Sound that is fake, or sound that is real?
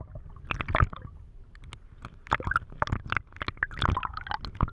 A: real